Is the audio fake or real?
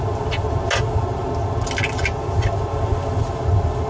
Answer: real